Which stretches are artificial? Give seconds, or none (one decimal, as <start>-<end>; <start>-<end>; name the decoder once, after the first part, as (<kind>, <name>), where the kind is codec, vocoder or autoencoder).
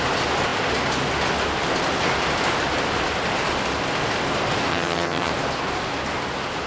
4.7-5.3 (vocoder, HiFi-GAN)